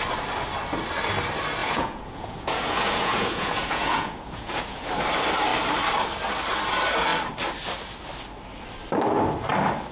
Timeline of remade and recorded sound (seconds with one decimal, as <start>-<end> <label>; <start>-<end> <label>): 0.0-1.6 recorded; 1.6-4.9 remade; 4.9-9.9 recorded